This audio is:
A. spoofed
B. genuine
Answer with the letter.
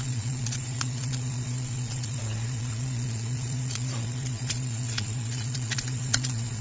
A